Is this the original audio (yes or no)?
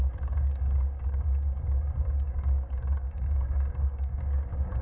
no